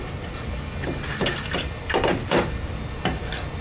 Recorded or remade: recorded